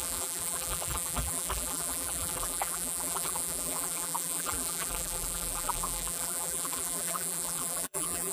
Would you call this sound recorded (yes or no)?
no